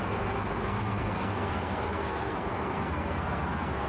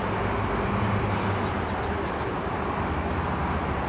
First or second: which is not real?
first